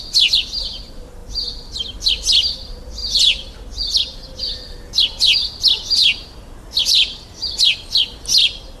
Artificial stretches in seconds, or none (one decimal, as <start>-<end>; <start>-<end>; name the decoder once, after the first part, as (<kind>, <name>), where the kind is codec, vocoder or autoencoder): none